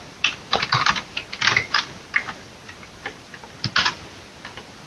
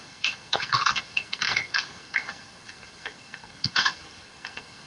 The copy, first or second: second